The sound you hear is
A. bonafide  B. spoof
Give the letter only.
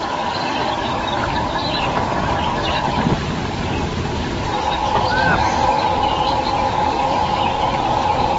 B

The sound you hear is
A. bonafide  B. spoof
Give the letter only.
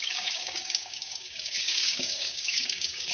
B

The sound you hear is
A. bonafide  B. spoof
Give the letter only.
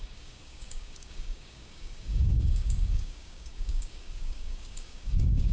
B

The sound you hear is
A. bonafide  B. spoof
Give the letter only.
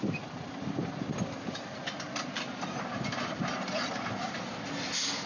A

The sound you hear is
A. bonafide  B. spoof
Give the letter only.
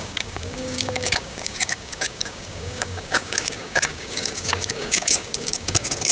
B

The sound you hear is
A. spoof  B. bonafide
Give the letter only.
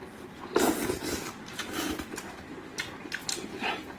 B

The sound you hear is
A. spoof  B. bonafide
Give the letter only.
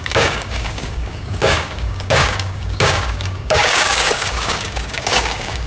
A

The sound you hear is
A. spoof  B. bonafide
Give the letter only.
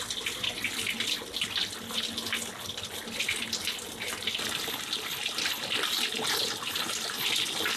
B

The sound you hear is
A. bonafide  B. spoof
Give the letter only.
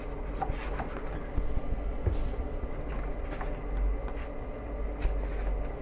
A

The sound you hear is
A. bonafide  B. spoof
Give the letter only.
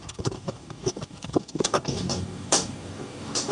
B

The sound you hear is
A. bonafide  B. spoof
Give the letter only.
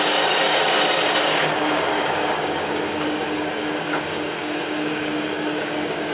B